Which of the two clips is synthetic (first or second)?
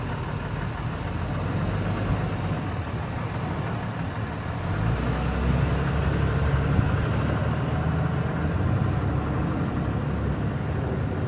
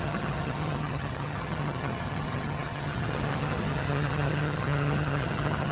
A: second